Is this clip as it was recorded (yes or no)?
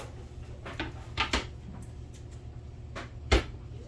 yes